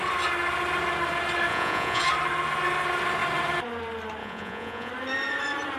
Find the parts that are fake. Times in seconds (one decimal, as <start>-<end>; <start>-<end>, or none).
1.5-2.0; 4.2-4.9